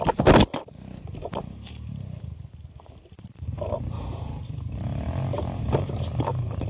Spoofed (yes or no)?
no